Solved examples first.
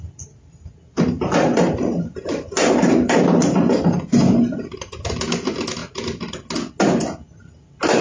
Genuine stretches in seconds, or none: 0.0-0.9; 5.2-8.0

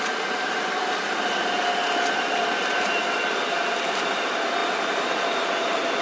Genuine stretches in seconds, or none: 0.0-6.0

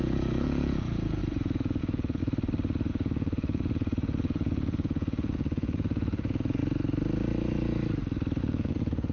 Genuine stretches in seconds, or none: 2.2-2.9; 6.6-8.4